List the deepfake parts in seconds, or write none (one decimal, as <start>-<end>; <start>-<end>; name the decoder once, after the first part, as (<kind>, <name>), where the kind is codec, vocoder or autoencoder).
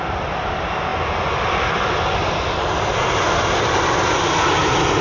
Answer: none